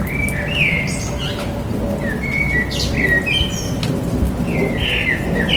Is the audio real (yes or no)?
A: yes